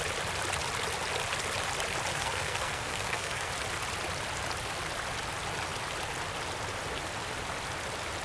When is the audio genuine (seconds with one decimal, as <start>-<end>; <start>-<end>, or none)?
0.0-2.1; 3.5-8.2

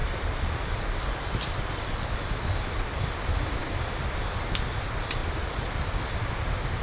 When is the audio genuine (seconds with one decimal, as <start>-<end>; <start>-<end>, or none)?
3.1-3.6; 4.3-5.2; 6.3-6.8

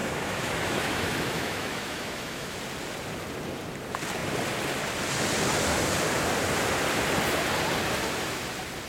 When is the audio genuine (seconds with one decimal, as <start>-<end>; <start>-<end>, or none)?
2.6-8.9

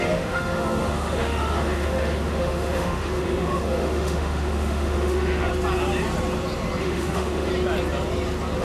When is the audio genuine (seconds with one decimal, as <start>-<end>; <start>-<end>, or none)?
5.5-6.8; 7.5-8.6

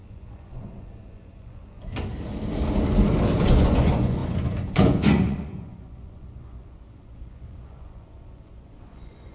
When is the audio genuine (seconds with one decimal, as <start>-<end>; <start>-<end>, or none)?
2.1-3.4